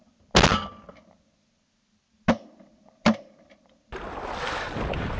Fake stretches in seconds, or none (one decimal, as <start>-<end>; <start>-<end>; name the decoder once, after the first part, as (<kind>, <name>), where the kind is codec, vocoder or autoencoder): none